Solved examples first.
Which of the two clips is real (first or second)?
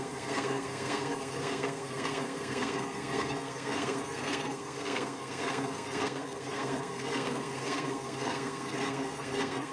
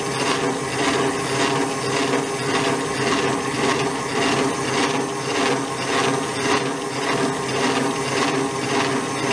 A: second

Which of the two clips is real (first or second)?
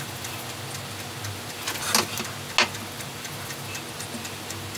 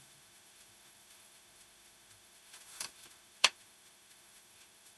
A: first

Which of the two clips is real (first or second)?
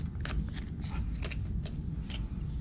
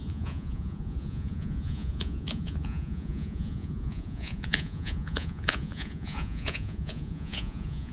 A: first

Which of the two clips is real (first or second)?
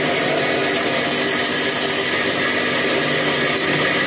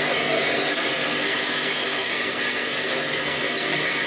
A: first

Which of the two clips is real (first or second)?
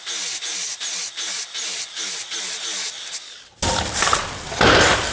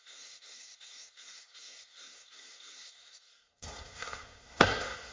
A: first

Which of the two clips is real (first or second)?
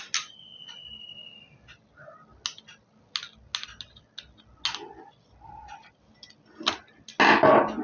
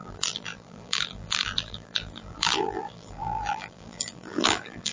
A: first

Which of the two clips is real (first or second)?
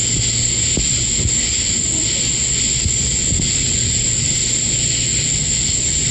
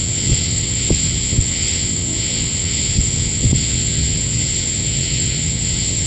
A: first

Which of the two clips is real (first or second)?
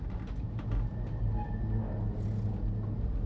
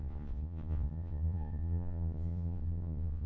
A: first